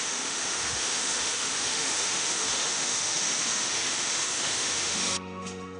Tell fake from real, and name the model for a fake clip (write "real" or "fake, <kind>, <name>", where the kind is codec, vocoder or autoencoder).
fake, autoencoder, DAC-VAE